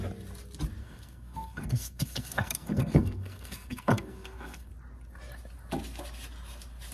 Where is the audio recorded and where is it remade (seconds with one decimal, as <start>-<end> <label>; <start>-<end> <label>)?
0.0-0.8 recorded; 0.8-4.7 remade; 4.7-6.9 recorded